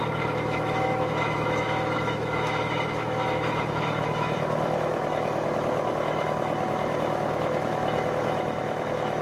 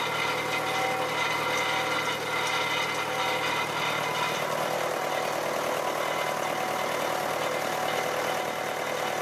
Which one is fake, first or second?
first